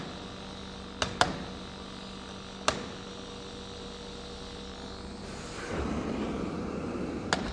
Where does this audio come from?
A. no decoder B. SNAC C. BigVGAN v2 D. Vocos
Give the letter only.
A